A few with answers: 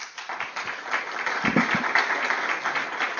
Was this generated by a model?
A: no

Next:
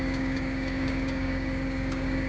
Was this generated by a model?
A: yes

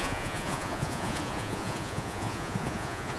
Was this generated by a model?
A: yes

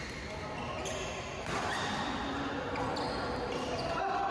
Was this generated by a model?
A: no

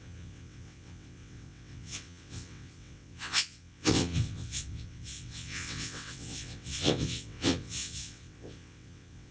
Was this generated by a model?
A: yes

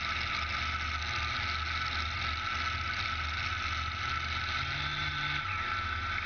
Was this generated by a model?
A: no